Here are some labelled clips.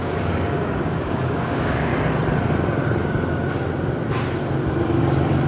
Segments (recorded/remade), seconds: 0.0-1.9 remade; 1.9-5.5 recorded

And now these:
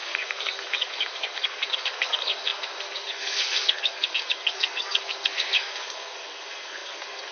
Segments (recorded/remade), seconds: 0.0-7.3 remade

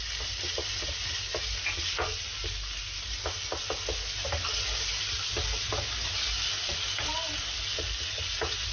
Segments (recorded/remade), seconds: 0.0-8.7 recorded

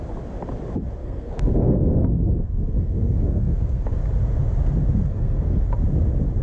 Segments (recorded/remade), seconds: 0.0-1.0 recorded; 1.0-4.0 remade; 4.0-5.1 recorded; 5.1-5.6 remade; 5.6-6.4 recorded

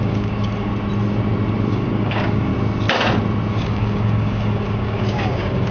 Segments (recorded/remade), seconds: 0.0-0.7 remade; 0.7-1.7 recorded; 1.7-2.5 remade; 2.5-3.5 recorded; 3.5-5.7 remade